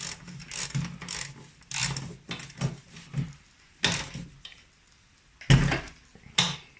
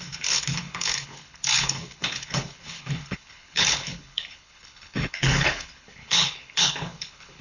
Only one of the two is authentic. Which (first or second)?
first